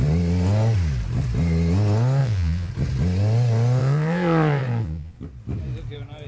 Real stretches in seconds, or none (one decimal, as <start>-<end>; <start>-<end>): 0.0-2.2; 2.7-3.8; 5.2-6.3